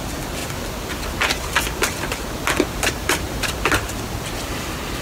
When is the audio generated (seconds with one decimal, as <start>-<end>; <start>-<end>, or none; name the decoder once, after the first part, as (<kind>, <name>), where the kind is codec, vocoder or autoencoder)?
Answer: 3.0-3.5 (vocoder, BigVGAN v2)